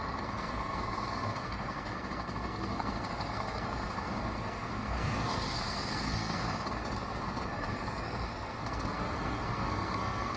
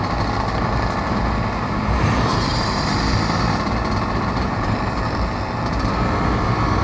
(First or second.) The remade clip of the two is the first